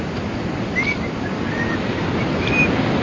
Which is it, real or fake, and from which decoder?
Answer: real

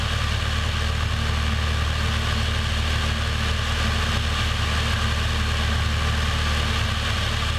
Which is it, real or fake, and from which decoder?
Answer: real